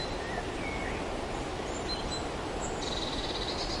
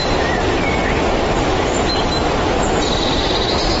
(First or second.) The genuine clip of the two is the first